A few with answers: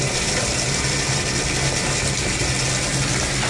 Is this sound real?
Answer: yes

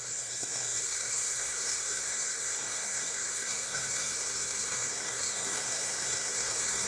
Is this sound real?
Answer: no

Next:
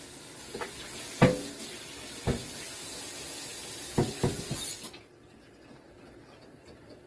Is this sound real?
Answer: yes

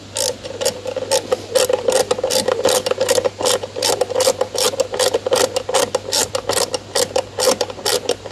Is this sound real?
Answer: yes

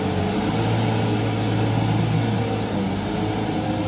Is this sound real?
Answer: yes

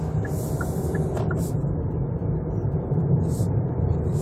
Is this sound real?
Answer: no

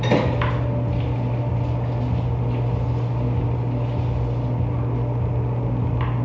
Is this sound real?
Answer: yes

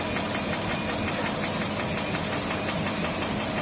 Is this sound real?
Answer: yes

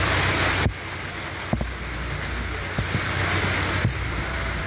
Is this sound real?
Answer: yes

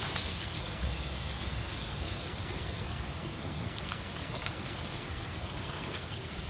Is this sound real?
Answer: no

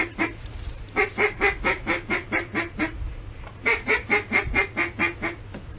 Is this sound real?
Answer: yes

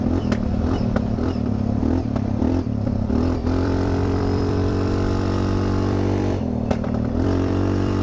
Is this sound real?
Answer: no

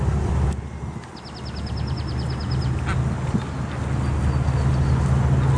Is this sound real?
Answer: yes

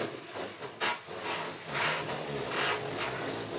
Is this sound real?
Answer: yes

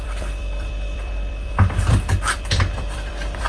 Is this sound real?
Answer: no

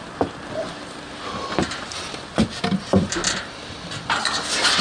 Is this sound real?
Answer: yes